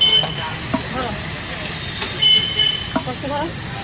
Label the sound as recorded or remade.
recorded